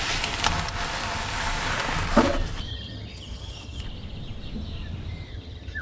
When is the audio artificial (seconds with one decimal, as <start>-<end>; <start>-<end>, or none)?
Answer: 2.7-3.8; 5.3-5.8